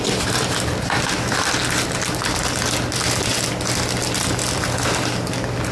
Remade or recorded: recorded